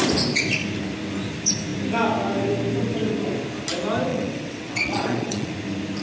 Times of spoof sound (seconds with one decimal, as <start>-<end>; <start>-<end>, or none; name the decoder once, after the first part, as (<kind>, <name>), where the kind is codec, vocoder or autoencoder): 4.1-5.5 (vocoder, WaveNeXt)